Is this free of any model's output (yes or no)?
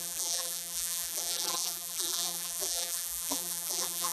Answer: no